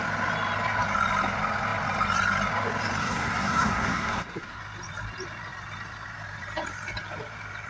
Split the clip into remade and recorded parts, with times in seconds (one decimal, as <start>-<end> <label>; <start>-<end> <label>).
0.0-3.0 recorded; 3.0-4.6 remade; 4.6-7.7 recorded